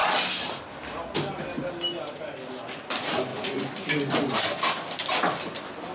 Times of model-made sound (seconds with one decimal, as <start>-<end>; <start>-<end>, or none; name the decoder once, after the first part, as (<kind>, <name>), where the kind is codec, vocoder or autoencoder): none